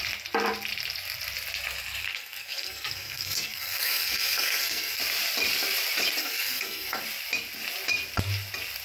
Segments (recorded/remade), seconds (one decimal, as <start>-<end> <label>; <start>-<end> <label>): 0.0-2.0 recorded; 2.0-5.0 remade; 5.0-6.2 recorded; 6.2-7.0 remade; 7.0-8.8 recorded